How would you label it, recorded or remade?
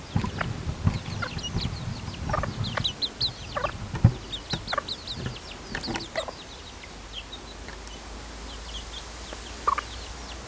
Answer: recorded